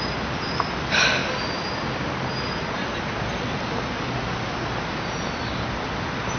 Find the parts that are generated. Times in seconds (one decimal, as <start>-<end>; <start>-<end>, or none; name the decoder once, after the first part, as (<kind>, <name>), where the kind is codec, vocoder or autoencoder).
none